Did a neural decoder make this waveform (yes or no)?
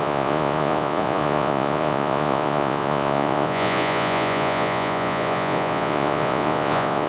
yes